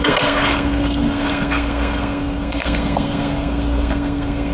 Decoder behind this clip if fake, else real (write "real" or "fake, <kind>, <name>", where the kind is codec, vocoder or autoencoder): fake, codec, SNAC